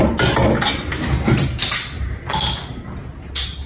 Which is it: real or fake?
real